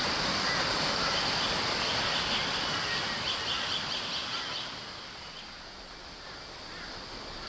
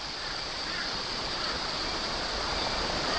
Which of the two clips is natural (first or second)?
first